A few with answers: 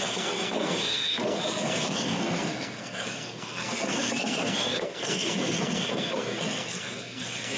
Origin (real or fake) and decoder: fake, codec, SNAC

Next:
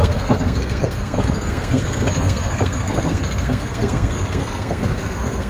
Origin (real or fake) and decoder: fake, codec, SNAC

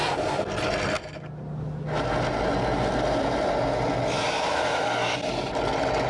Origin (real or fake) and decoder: real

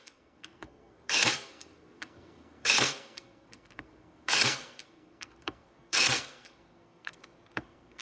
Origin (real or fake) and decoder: fake, codec, SNAC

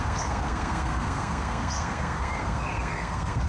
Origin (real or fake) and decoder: fake, codec, SNAC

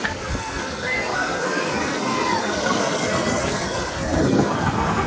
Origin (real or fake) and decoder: fake, codec, SNAC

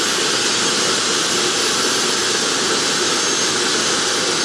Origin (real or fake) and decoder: real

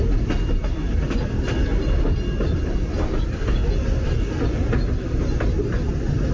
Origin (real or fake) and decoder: real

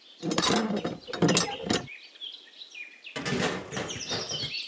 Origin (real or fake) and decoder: real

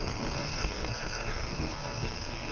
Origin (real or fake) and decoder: fake, codec, SNAC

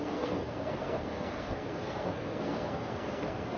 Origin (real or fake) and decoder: fake, codec, SNAC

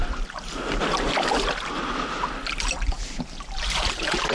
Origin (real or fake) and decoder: real